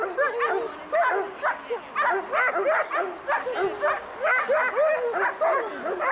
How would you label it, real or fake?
real